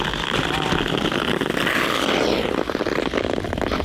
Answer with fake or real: real